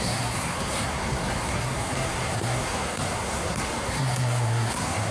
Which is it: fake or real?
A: fake